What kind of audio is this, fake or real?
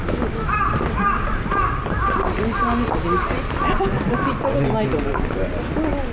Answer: real